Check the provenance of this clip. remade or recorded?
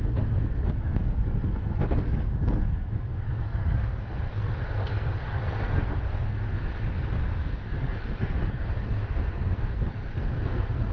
remade